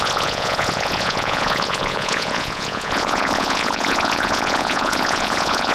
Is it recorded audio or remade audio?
remade